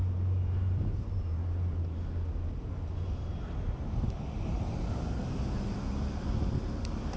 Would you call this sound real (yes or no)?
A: yes